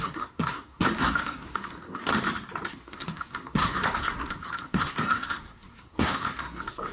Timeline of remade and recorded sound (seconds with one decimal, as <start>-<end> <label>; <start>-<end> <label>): 0.0-2.1 remade; 2.1-2.7 recorded; 2.7-6.9 remade